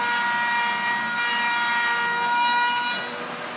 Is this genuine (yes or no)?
yes